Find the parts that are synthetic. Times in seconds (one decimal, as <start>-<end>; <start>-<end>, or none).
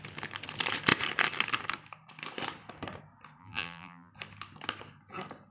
3.4-4.1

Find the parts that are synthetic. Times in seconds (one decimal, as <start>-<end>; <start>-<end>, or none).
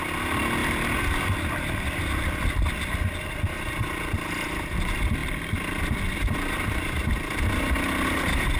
0.6-2.4; 5.2-7.4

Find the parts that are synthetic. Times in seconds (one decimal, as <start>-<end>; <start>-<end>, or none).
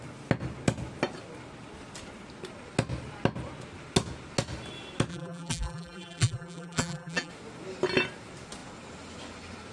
5.1-7.3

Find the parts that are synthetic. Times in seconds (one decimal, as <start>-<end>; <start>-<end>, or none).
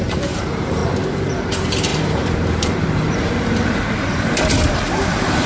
0.0-0.8; 1.5-5.5